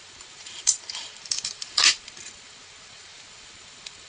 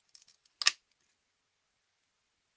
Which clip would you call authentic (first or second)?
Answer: second